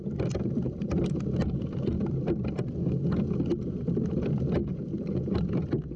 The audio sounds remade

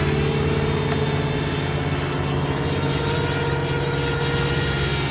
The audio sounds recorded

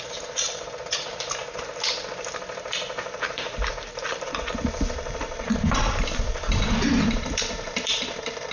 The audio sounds remade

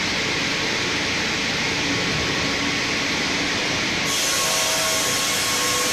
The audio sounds recorded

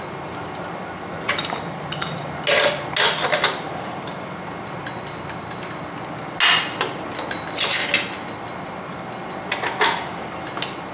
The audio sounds recorded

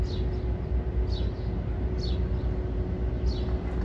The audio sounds recorded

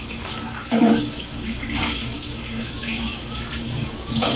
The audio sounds remade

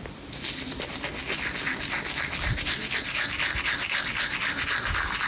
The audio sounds recorded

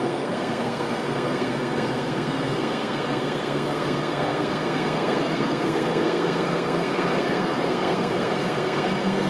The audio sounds remade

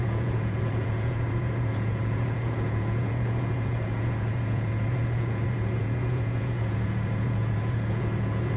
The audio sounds remade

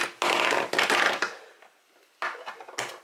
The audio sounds recorded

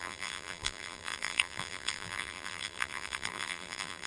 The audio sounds remade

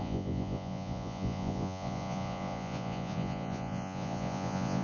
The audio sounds remade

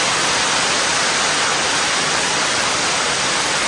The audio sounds recorded